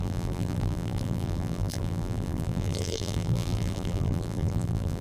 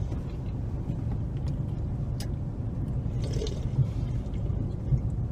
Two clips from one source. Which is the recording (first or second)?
second